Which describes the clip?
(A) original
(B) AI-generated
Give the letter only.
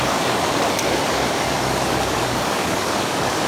B